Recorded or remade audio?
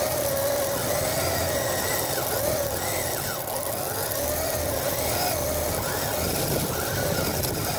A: recorded